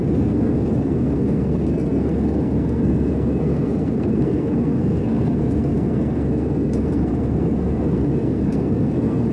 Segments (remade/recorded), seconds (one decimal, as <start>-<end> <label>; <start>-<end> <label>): 0.0-9.3 remade